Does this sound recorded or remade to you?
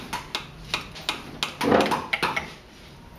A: recorded